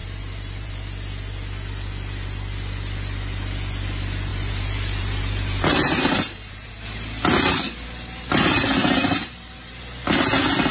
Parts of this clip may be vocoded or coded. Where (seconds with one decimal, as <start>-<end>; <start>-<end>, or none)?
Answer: 0.0-0.7; 4.3-6.7; 8.8-10.2